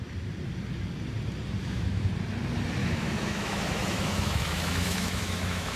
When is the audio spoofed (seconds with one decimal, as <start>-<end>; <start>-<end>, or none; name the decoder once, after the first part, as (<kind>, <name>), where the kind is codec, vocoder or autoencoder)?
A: 1.6-2.1 (autoencoder, DAC-VAE); 2.8-5.8